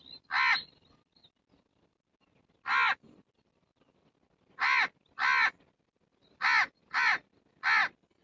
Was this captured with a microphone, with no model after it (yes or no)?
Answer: yes